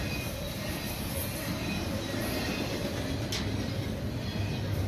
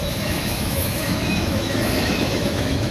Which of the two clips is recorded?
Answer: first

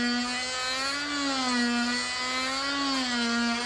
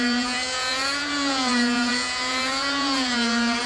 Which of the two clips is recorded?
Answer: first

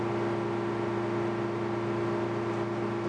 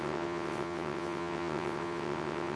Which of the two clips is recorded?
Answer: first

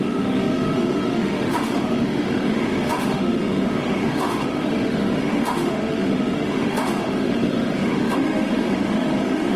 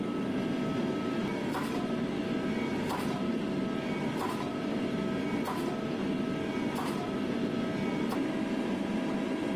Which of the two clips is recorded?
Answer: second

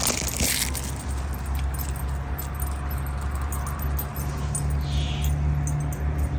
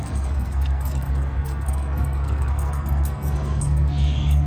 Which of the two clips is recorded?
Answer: first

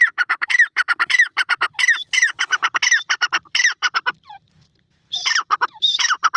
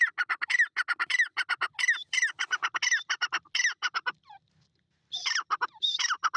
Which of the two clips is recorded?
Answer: second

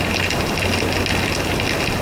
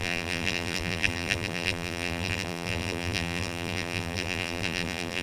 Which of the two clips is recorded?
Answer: first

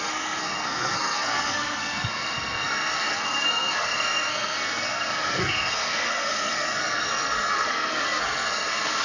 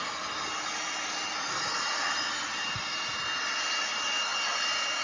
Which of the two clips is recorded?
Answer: second